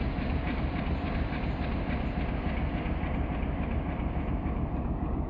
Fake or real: real